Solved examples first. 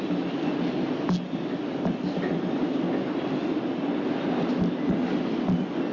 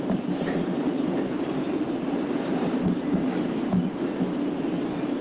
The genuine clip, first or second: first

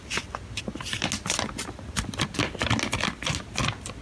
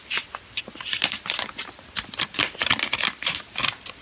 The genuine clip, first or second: first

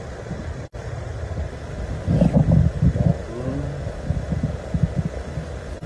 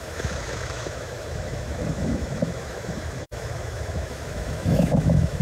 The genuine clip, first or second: first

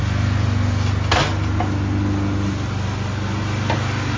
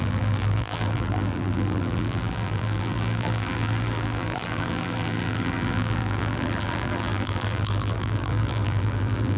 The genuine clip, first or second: first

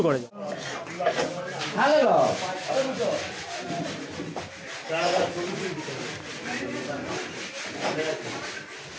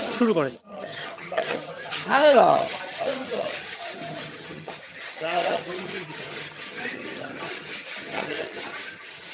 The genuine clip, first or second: first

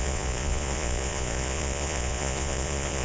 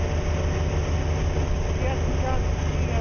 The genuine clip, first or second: second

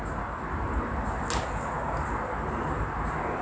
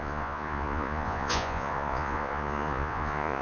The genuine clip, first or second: first